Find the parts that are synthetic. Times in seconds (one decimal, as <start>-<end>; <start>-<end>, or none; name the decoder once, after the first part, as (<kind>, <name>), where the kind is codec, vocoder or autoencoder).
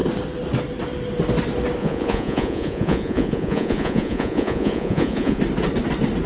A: 1.8-5.4 (vocoder, Vocos)